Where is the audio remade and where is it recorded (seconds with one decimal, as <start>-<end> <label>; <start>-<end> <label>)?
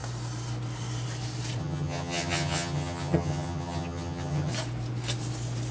0.0-1.6 recorded; 1.6-4.5 remade; 4.5-5.7 recorded